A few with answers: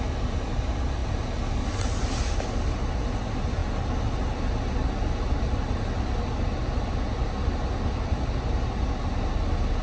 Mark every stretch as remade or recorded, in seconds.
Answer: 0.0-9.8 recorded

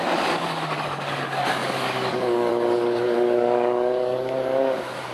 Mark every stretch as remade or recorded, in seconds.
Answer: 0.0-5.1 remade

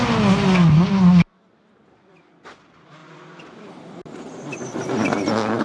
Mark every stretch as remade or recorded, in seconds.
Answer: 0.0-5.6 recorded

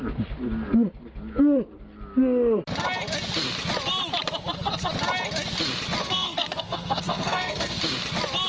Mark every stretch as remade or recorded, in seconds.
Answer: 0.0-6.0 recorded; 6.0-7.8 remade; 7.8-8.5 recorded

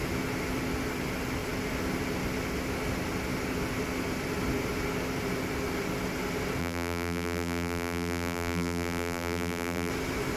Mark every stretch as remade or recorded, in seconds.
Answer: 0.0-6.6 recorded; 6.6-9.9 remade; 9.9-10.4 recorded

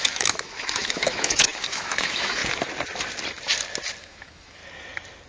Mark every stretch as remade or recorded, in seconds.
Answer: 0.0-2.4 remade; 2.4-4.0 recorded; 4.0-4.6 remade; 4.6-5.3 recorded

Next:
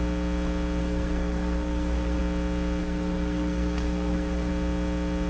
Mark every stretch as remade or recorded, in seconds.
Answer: 0.0-0.8 recorded; 0.8-2.2 remade; 2.2-2.8 recorded; 2.8-4.5 remade; 4.5-5.3 recorded